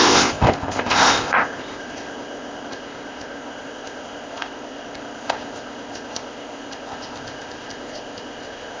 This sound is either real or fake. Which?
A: fake